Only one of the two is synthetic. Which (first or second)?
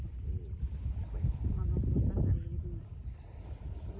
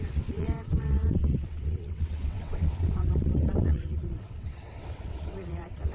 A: second